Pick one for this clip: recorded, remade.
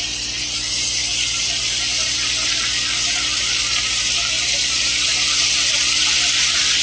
remade